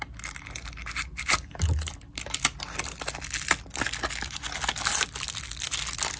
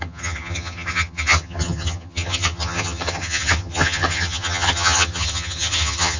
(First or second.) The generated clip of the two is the second